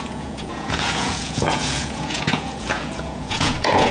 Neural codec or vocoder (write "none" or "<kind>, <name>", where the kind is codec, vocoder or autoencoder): vocoder, Vocos